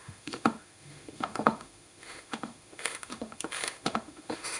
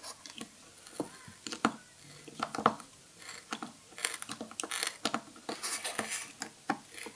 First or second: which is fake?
first